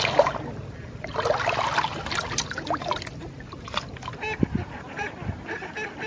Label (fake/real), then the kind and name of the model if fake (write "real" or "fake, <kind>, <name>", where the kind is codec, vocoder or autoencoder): real